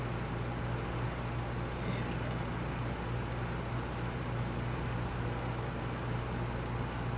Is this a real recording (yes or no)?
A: yes